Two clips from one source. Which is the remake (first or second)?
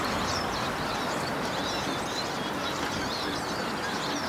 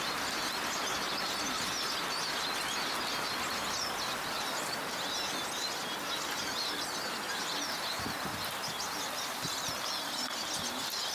first